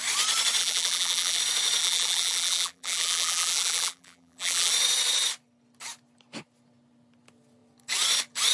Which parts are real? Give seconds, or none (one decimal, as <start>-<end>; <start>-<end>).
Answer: 0.0-0.6; 1.4-1.8; 4.7-8.5